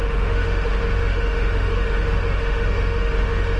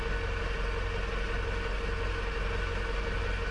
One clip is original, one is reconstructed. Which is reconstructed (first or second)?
first